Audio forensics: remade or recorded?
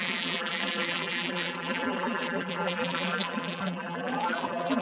remade